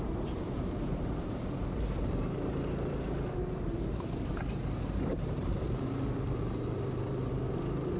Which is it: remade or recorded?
remade